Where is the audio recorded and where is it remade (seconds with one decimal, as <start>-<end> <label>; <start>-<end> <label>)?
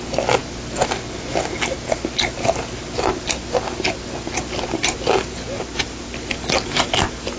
0.0-7.4 recorded